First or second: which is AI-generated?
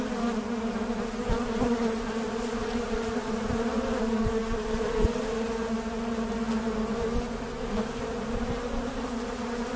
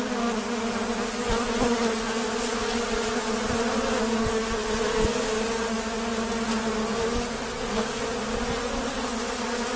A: first